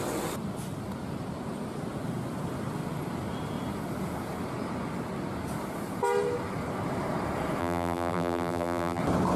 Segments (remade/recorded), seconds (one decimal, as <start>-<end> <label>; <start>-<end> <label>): 0.0-7.6 recorded; 7.6-9.0 remade; 9.0-9.4 recorded